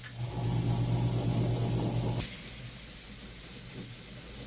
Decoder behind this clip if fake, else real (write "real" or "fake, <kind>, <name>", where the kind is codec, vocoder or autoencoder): real